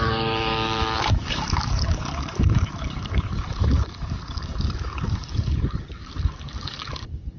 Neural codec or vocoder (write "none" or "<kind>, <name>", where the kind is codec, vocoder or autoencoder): codec, DAC